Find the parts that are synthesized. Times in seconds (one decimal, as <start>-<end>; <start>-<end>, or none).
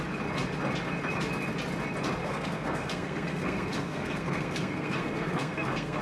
2.2-6.0